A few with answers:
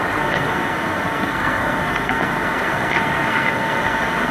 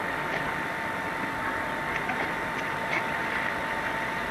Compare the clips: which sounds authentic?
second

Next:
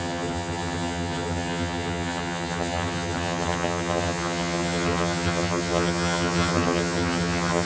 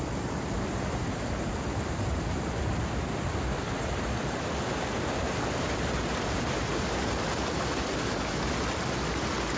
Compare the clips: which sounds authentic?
second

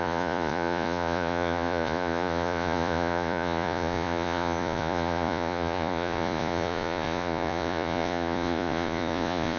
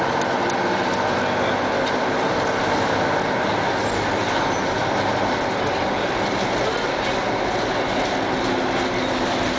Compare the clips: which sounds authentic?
second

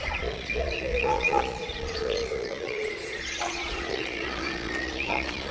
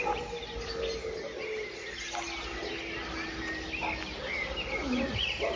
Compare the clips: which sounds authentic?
second